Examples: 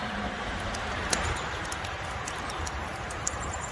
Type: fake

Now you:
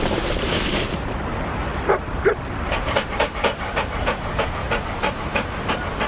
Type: fake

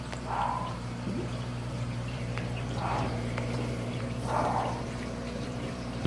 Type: fake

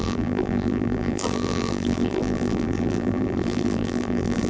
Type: fake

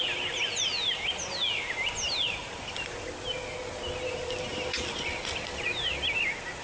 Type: real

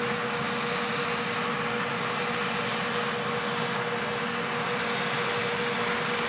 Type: real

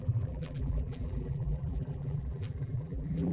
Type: fake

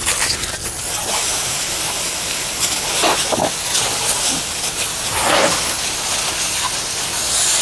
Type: real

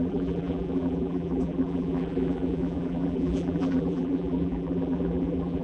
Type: fake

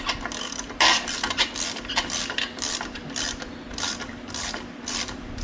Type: fake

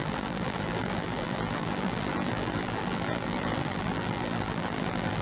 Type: fake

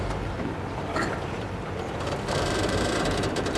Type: fake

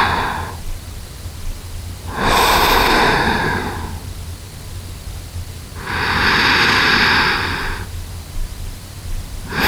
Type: real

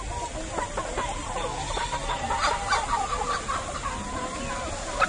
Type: real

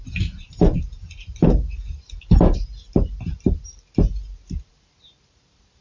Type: fake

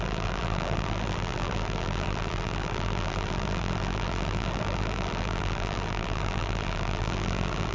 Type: fake